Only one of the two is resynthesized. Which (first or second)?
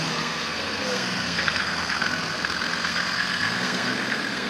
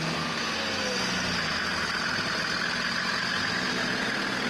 first